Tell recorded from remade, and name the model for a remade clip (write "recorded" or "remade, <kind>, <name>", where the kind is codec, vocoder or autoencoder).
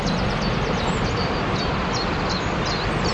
recorded